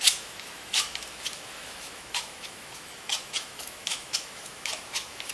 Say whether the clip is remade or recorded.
remade